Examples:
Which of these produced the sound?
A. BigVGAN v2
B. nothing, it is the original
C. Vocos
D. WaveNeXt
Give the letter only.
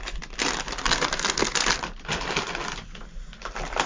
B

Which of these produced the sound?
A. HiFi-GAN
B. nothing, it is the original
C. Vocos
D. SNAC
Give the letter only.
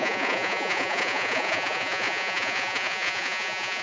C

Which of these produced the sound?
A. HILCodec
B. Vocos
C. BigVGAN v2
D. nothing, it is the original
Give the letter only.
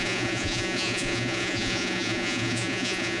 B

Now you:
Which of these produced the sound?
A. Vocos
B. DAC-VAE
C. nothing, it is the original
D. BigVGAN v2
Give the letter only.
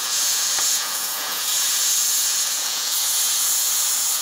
A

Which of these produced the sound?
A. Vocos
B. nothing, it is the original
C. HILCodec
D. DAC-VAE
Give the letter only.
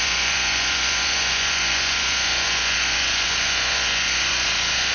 A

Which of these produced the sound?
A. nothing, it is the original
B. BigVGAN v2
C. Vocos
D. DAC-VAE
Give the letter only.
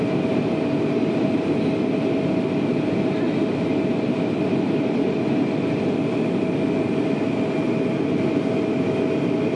A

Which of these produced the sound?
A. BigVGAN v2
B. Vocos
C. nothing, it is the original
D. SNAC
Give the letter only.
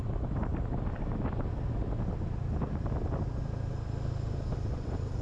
C